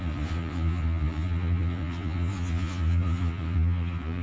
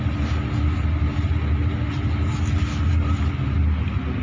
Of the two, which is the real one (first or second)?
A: second